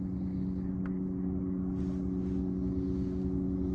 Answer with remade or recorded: recorded